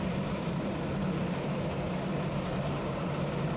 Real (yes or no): no